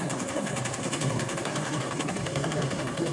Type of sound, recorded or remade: remade